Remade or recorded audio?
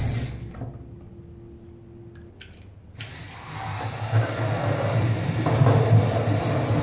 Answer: recorded